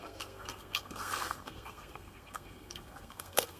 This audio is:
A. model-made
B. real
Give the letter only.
A